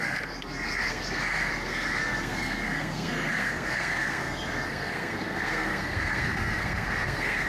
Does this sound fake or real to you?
fake